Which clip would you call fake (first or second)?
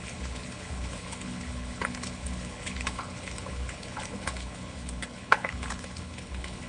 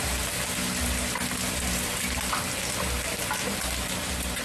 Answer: first